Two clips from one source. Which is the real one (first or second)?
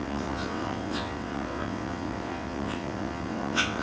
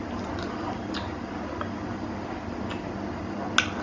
second